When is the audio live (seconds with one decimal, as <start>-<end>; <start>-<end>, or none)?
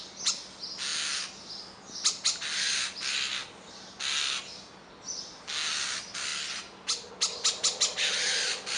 0.0-8.8